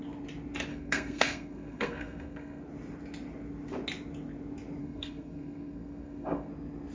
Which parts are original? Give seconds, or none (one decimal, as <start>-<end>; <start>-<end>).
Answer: 0.0-0.7; 2.6-4.8; 6.5-6.9